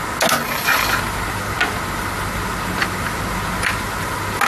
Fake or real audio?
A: real